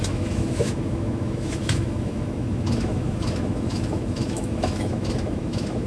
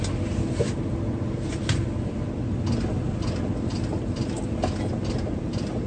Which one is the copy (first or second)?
first